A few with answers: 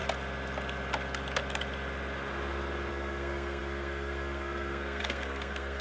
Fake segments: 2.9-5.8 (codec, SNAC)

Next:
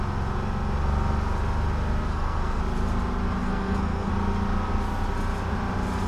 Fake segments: 2.1-2.6 (codec, SNAC); 3.4-4.1

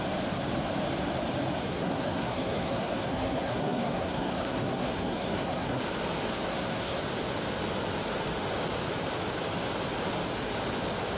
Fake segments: 1.6-5.8 (codec, SNAC); 6.5-7.0

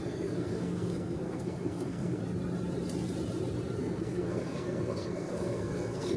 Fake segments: 0.0-2.2 (codec, SNAC); 3.8-6.2

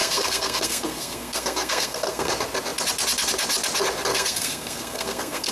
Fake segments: 0.0-2.3 (codec, SNAC); 4.1-5.5

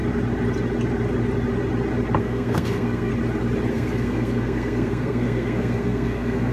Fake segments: 2.2-3.1 (codec, SNAC); 3.7-6.5

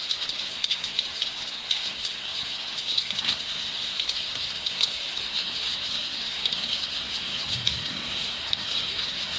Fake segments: 0.0-9.4 (codec, SNAC)